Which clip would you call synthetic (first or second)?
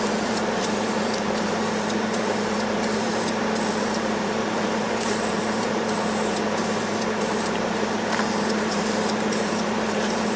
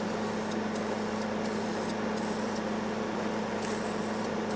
first